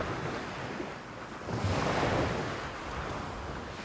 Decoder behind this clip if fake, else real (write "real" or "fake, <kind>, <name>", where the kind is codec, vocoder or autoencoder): real